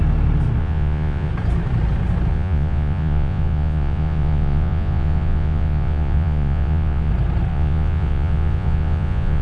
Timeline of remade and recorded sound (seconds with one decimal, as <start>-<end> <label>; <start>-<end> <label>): 0.0-0.6 recorded; 0.6-1.3 remade; 1.3-2.3 recorded; 2.3-7.1 remade; 7.1-7.5 recorded; 7.5-9.4 remade